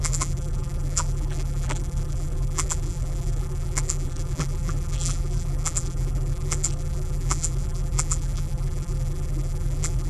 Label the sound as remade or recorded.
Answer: remade